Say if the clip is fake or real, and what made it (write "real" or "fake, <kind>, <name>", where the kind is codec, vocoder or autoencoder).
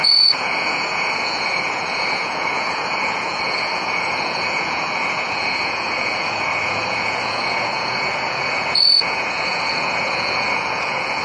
fake, vocoder, Vocos